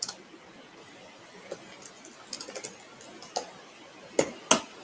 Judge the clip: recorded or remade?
recorded